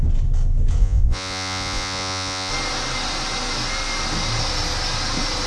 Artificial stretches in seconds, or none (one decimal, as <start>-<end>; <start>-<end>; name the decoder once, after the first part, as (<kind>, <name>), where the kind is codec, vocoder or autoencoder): 0.8-2.5 (vocoder, Vocos)